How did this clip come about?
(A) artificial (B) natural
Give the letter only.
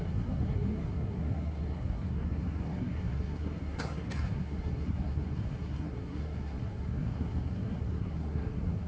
A